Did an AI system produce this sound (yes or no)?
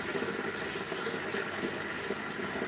no